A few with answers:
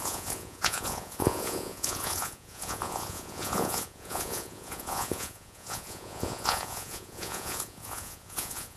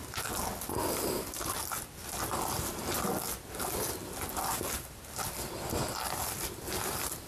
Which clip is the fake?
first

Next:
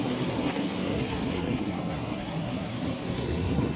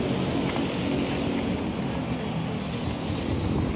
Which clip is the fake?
first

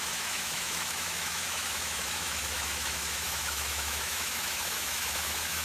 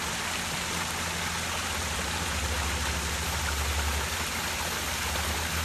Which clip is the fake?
first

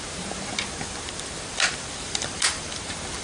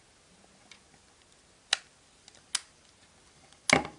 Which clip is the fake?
first